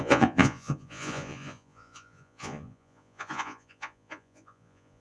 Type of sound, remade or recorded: remade